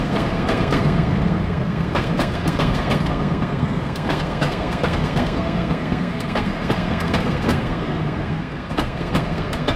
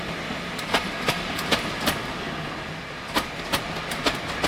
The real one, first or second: second